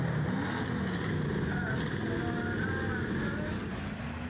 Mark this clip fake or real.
real